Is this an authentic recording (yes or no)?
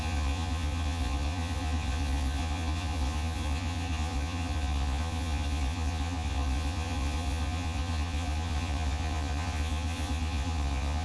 no